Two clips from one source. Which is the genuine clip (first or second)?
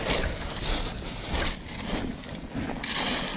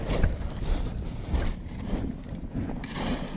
first